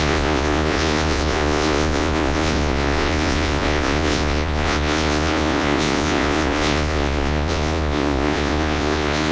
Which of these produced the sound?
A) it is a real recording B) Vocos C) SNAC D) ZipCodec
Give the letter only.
B